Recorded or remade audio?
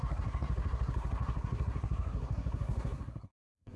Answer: remade